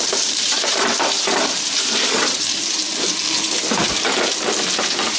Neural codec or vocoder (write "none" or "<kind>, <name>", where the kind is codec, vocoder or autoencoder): vocoder, BigVGAN v2